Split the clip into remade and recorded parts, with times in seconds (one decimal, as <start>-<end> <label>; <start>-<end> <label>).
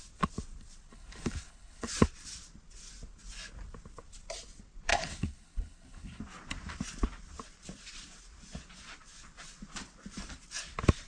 0.0-0.9 recorded; 0.9-1.9 remade; 1.9-4.9 recorded; 4.9-6.2 remade; 6.2-11.1 recorded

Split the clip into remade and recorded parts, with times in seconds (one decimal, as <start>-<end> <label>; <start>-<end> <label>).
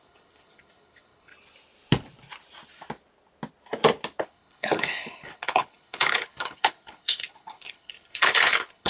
0.0-1.3 remade; 1.3-4.2 recorded; 4.2-8.9 remade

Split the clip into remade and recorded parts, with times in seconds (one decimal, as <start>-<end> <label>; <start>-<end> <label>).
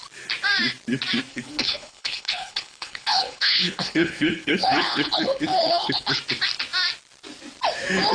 0.0-1.3 recorded; 1.3-6.2 remade; 6.2-8.1 recorded